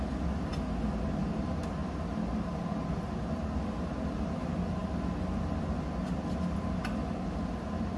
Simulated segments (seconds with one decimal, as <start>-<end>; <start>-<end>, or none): none